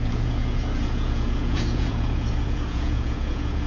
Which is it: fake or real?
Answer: fake